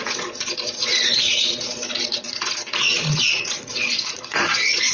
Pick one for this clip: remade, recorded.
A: remade